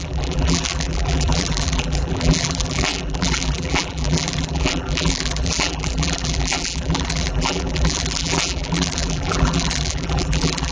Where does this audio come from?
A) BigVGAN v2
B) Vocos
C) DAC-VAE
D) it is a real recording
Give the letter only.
A